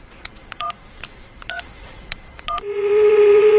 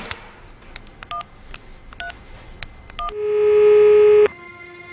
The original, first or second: second